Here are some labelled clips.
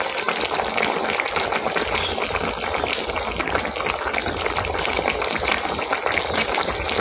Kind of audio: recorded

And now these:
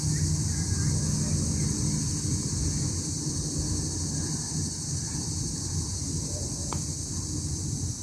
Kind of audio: recorded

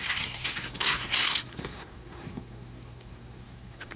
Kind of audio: remade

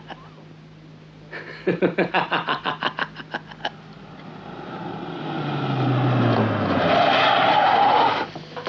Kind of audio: recorded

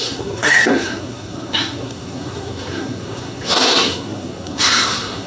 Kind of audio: remade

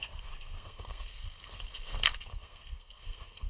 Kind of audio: remade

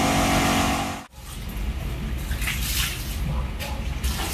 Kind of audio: recorded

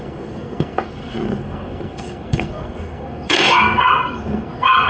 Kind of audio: remade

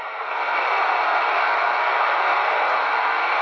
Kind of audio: remade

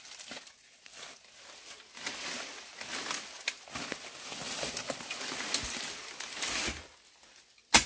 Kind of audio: recorded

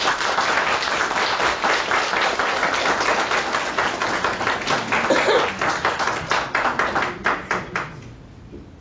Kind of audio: recorded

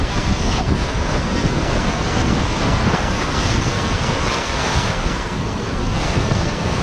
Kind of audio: remade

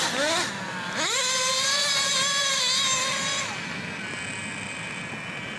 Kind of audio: recorded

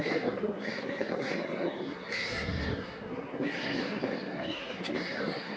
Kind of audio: remade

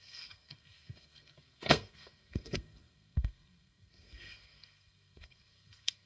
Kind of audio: remade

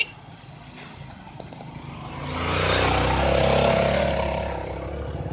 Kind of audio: recorded